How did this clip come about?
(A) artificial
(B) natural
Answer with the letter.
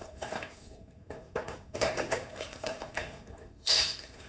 A